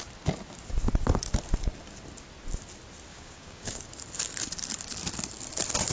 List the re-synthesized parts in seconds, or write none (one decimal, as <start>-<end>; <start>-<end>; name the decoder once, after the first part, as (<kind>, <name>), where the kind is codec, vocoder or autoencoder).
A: 3.1-3.8 (codec, DAC)